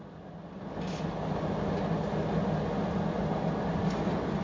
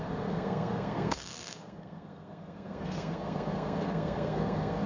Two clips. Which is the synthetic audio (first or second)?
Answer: second